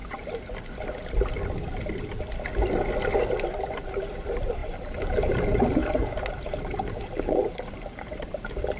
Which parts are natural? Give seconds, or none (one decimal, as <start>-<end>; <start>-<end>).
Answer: 0.0-3.9